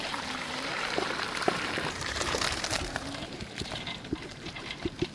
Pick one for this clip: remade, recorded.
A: remade